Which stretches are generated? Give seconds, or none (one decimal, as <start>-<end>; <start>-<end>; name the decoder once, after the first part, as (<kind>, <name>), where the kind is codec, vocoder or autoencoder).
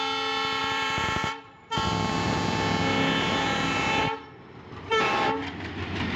0.6-2.4 (vocoder, BigVGAN v2); 4.0-5.4